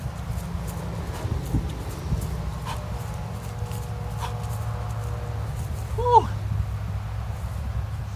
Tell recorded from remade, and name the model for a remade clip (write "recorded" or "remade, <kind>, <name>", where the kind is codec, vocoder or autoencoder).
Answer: recorded